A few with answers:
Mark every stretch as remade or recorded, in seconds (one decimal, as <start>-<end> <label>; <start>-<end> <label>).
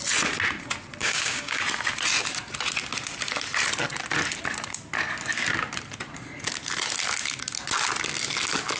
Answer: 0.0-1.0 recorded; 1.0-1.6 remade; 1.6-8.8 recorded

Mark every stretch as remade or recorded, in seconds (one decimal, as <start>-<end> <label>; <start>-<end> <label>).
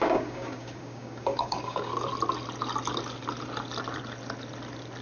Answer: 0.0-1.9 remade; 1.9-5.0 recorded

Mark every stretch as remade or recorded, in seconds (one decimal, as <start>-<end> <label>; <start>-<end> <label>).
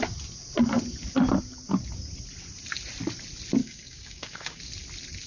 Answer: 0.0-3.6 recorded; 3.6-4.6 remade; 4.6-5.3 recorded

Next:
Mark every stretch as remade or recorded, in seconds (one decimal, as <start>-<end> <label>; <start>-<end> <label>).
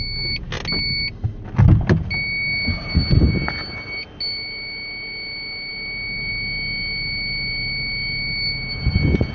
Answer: 0.0-9.3 recorded